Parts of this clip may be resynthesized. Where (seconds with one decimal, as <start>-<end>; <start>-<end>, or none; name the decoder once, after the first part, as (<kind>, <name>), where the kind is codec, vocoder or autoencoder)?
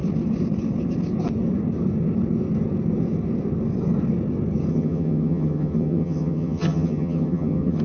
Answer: 4.7-7.8 (vocoder, HiFi-GAN)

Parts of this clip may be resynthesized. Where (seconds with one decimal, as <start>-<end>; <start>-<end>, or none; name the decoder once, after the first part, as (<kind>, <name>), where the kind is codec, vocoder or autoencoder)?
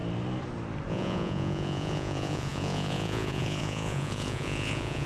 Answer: 0.9-5.1 (vocoder, Vocos)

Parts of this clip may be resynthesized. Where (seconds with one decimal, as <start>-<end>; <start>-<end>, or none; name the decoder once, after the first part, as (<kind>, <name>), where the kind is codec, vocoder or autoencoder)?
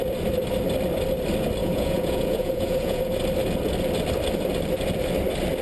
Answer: 1.6-3.0 (vocoder, Vocos)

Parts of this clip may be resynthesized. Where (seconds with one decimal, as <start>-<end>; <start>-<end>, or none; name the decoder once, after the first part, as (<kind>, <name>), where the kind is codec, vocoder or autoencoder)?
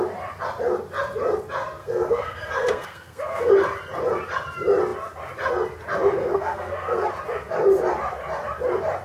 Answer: 1.8-3.5 (codec, SNAC); 6.2-7.1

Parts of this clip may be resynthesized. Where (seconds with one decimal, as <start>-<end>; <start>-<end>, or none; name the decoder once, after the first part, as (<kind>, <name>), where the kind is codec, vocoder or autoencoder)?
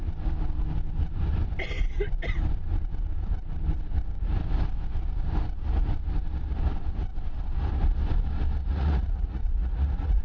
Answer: 8.7-10.2 (vocoder, Vocos)